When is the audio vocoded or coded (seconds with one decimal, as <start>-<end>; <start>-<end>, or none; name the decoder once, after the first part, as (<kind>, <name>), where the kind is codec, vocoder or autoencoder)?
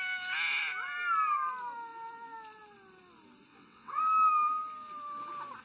3.5-4.0 (vocoder, WaveNeXt)